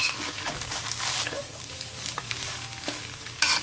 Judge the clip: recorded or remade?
remade